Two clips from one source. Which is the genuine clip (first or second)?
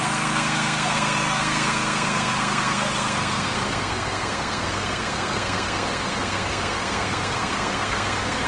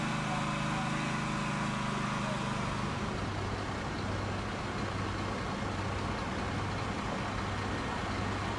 second